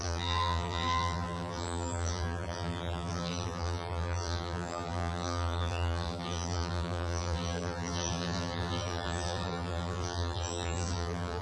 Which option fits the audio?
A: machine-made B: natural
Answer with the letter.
A